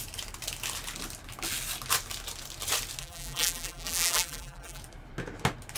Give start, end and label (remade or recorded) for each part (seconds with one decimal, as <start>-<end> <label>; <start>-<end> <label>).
0.0-3.0 recorded; 3.0-4.8 remade; 4.8-5.8 recorded